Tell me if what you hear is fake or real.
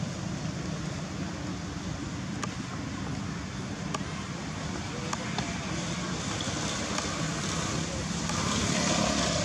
real